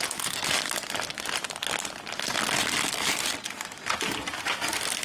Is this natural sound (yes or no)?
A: yes